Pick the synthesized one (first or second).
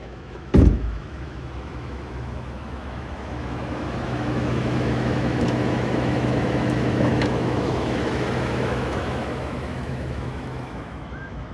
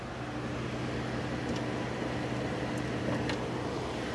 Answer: first